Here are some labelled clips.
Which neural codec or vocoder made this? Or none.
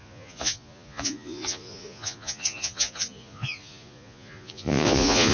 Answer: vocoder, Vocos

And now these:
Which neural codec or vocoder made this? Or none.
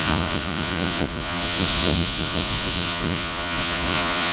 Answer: vocoder, Vocos